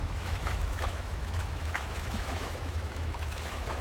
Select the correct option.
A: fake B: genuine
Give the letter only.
A